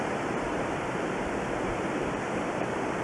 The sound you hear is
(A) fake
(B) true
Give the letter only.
A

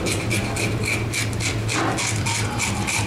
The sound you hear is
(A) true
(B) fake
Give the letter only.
A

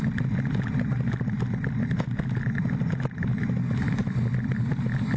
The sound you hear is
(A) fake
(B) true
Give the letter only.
B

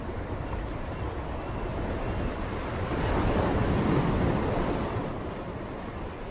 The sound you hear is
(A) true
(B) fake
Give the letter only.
B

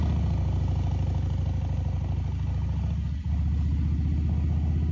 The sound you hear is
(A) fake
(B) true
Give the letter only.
B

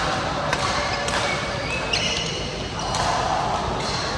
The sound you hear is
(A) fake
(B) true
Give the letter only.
B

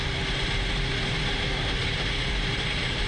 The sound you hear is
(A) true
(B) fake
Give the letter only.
B